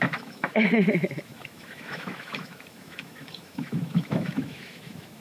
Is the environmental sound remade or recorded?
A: remade